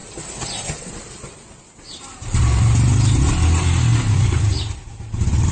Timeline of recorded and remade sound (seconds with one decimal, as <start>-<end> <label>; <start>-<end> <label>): 0.0-5.5 recorded